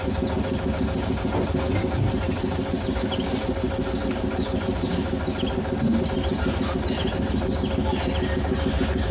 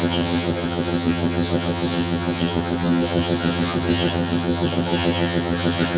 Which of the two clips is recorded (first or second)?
first